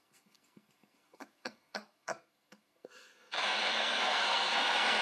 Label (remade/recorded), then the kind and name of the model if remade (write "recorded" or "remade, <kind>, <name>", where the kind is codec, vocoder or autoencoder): remade, codec, SNAC